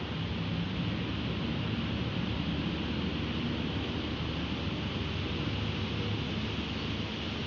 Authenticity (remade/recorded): recorded